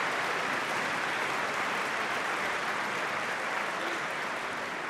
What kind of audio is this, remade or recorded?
recorded